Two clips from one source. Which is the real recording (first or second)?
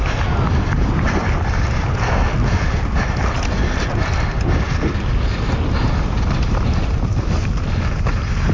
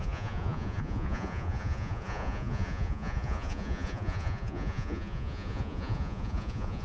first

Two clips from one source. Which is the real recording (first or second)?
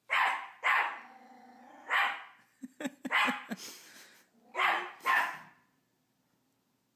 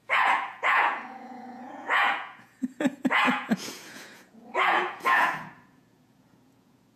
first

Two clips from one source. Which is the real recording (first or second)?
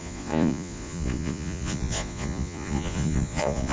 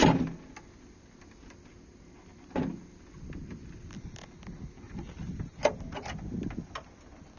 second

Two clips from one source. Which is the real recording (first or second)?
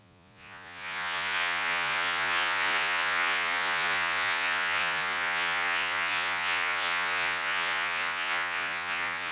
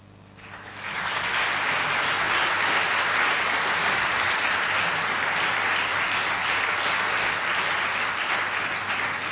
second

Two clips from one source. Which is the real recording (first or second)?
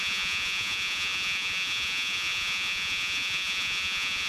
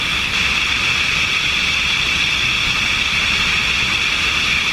second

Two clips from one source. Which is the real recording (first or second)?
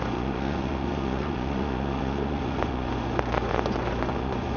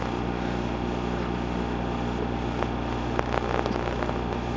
second